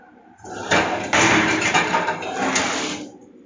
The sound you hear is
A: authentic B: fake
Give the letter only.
B